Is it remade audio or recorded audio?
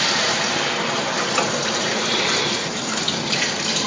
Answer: recorded